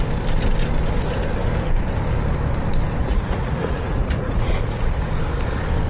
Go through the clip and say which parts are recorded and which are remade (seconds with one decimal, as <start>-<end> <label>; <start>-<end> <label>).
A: 0.0-3.0 recorded; 3.0-5.0 remade; 5.0-5.9 recorded